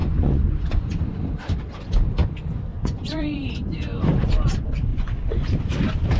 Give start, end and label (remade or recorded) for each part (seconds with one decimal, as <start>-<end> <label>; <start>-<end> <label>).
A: 0.0-1.2 remade; 1.2-2.7 recorded; 2.7-3.4 remade; 3.4-4.9 recorded; 4.9-5.5 remade; 5.5-6.2 recorded